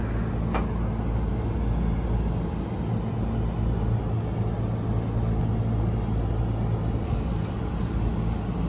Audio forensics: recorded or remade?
recorded